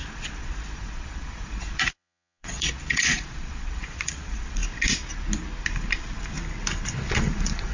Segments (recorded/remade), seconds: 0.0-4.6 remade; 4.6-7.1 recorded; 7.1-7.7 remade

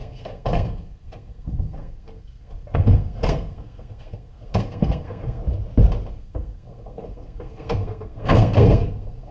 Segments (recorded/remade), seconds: 0.0-5.4 remade; 5.4-6.1 recorded; 6.1-9.3 remade

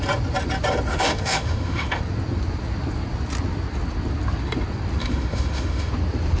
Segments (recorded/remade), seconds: 0.0-0.9 recorded; 0.9-2.0 remade; 2.0-5.0 recorded; 5.0-5.9 remade; 5.9-6.4 recorded

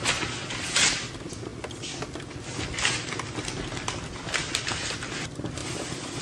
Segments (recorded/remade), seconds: 0.0-6.2 recorded

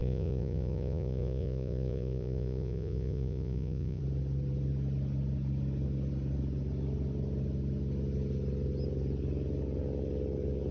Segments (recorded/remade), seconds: 0.0-4.0 remade; 4.0-10.7 recorded

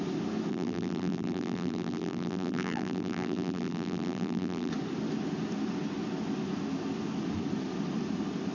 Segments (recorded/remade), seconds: 0.0-0.5 recorded; 0.5-4.7 remade; 4.7-8.5 recorded

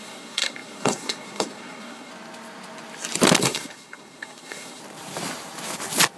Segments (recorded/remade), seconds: 0.0-2.1 remade; 2.1-3.4 recorded; 3.4-4.8 remade; 4.8-6.2 recorded